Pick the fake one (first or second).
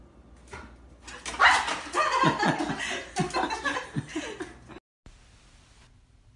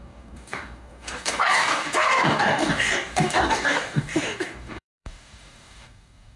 second